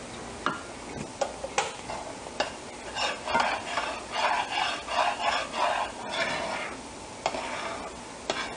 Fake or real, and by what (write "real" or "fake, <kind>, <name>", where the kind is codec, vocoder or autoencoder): real